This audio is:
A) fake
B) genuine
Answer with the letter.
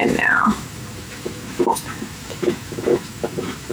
A